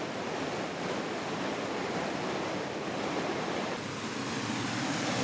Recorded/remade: remade